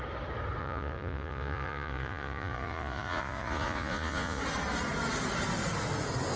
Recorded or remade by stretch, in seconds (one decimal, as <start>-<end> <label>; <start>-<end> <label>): 0.0-0.6 recorded; 0.6-4.4 remade; 4.4-6.4 recorded